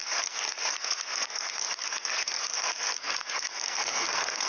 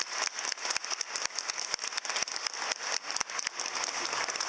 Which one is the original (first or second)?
second